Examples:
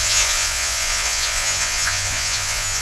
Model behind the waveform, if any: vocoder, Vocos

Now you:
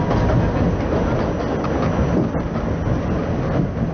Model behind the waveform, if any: none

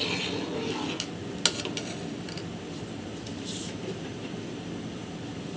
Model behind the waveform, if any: none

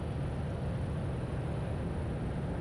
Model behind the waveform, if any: none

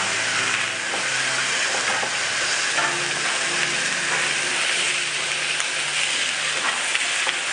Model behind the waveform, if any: none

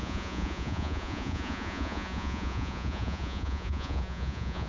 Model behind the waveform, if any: vocoder, Vocos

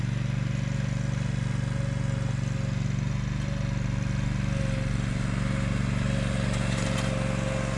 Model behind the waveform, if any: none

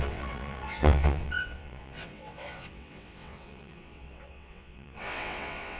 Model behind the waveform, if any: vocoder, WaveNeXt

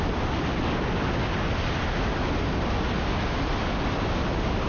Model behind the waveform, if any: none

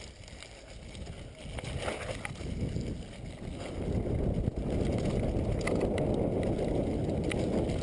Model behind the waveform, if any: none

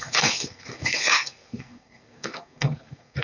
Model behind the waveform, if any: codec, SNAC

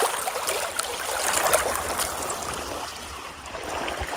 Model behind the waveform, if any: none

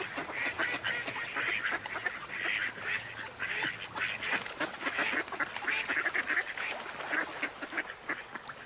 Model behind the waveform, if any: none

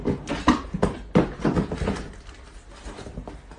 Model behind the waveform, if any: none